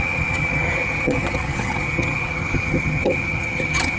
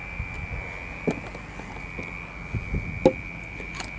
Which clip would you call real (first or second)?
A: second